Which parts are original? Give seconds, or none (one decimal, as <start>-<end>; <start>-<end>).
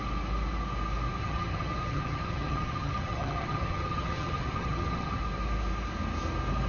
0.0-1.2; 5.2-6.7